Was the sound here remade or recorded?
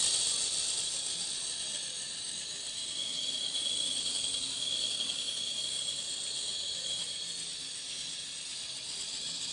recorded